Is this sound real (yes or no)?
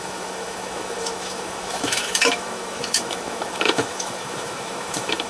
no